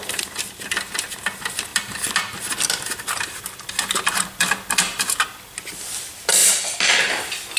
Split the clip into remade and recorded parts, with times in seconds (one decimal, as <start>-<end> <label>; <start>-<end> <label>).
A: 0.0-7.6 recorded